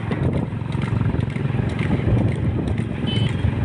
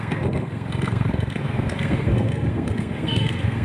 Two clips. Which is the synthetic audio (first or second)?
second